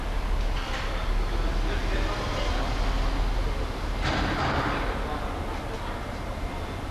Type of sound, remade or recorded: recorded